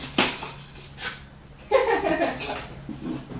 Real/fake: real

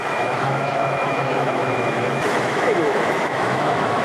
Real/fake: fake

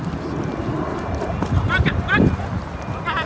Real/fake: real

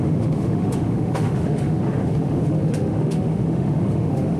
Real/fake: fake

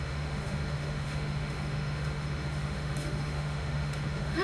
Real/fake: fake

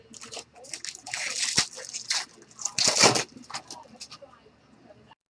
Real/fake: real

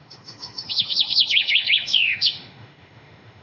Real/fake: fake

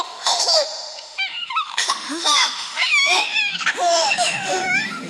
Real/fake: fake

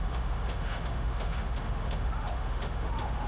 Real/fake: fake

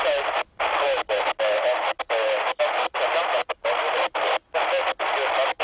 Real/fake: real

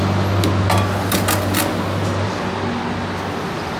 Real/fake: real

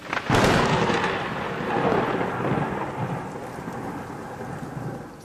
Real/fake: real